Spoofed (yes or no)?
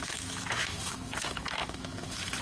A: yes